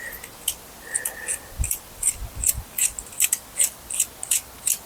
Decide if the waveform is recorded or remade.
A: recorded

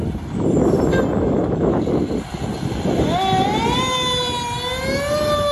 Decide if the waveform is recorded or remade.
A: recorded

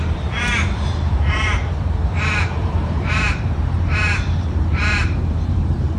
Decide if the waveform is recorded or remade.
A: remade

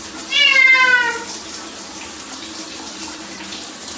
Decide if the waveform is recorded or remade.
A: recorded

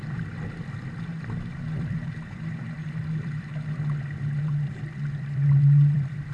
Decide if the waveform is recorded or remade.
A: remade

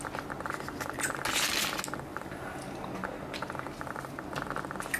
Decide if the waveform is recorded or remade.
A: recorded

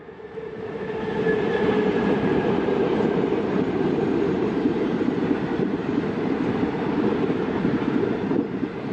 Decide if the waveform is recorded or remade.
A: remade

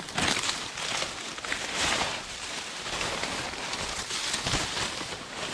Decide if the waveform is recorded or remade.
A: recorded